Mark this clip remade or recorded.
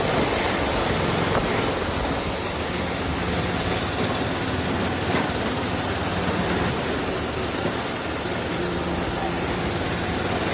recorded